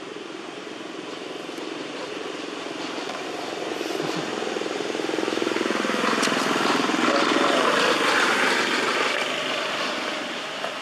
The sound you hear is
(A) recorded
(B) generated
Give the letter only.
B